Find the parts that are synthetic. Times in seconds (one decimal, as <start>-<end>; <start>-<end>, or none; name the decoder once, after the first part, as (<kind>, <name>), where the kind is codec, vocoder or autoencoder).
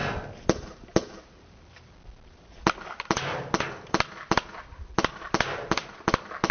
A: none